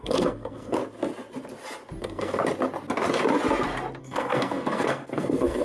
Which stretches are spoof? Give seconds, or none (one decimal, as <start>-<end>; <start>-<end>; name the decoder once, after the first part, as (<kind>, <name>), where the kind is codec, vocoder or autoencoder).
0.0-0.8 (codec, SNAC); 2.0-2.4; 4.0-5.6

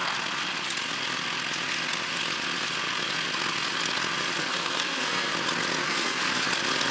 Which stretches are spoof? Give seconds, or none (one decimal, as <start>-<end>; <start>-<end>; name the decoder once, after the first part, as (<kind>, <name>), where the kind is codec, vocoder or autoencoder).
4.4-5.3 (codec, SNAC); 5.8-6.5

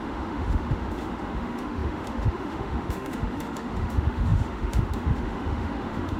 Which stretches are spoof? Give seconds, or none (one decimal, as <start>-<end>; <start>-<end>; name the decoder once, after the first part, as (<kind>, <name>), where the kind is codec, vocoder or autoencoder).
0.0-6.2 (autoencoder, DAC-VAE)

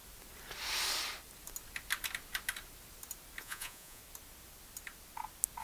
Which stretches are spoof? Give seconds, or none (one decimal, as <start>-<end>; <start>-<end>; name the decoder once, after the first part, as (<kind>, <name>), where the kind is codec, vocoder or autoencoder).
3.4-4.0 (vocoder, Vocos)

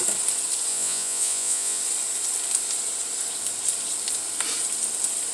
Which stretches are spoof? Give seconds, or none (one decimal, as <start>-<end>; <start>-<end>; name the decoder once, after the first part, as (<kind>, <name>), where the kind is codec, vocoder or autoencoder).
0.7-1.8 (vocoder, Vocos)

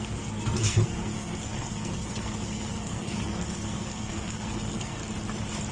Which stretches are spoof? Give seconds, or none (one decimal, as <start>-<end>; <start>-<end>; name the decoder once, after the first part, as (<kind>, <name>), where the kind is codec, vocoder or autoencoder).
0.0-5.0 (codec, SNAC)